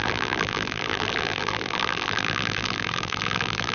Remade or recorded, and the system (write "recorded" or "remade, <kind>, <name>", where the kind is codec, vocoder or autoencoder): remade, vocoder, BigVGAN v2